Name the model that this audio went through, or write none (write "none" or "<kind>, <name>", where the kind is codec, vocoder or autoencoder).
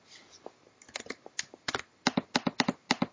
none